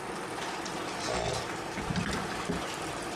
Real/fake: real